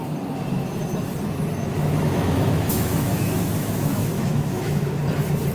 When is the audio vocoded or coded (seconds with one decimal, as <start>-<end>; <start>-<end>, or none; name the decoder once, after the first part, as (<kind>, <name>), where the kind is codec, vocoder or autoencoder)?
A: 1.7-5.0 (autoencoder, DAC-VAE)